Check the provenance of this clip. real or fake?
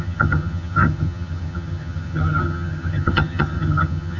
fake